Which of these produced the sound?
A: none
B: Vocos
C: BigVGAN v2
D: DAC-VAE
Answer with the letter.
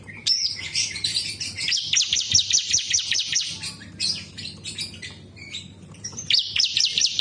C